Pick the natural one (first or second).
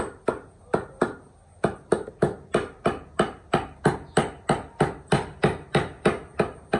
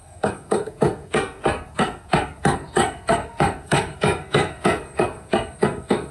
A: first